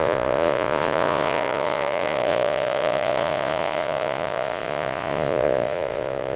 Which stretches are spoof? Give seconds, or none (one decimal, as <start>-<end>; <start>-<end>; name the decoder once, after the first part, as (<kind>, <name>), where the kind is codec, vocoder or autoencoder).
0.0-6.4 (vocoder, Vocos)